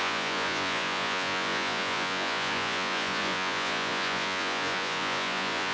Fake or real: fake